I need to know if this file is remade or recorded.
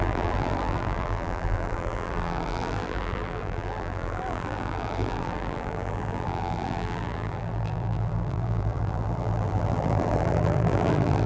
remade